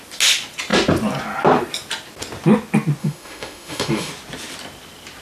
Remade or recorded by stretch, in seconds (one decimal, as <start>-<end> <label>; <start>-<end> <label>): 0.0-3.0 recorded; 3.0-4.1 remade; 4.1-5.2 recorded